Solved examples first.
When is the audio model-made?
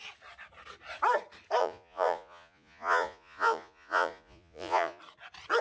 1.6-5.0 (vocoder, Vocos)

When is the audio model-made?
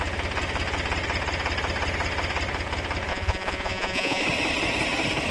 3.1-4.2 (vocoder, Vocos)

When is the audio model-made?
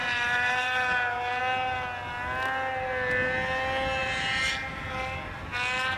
0.0-1.4 (vocoder, BigVGAN v2); 4.0-4.5